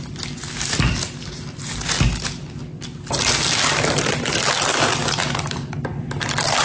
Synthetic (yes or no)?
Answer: no